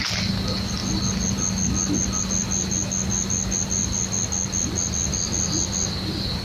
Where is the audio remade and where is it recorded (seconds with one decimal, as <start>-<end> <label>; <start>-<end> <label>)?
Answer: 0.0-6.4 recorded